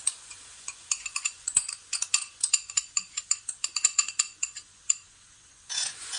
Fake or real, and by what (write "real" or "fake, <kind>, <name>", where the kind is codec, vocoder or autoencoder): fake, vocoder, Vocos